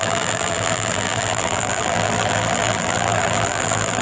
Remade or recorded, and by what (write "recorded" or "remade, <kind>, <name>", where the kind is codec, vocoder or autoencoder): remade, vocoder, BigVGAN v2